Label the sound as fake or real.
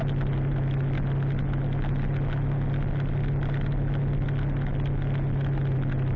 real